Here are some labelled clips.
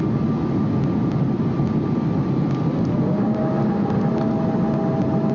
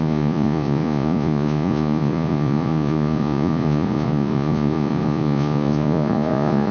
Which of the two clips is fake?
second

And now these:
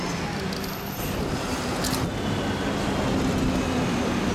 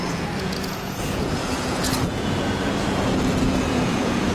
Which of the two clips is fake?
second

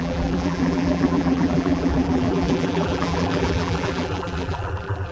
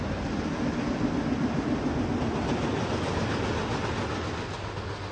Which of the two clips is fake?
first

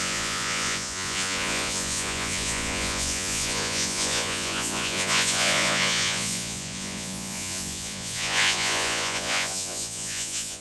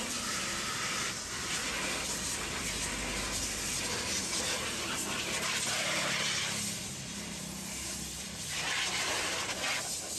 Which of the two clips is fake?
first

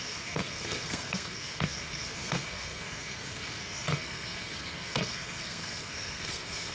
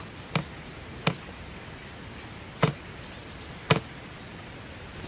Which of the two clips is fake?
first